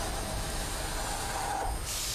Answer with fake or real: real